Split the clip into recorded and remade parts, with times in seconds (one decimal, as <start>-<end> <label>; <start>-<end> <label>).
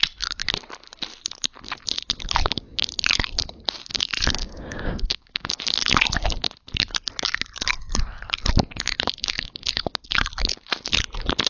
0.0-4.4 recorded; 4.4-5.6 remade; 5.6-9.2 recorded; 9.2-9.9 remade; 9.9-11.5 recorded